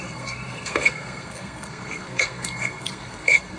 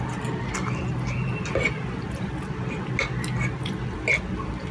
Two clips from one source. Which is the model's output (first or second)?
first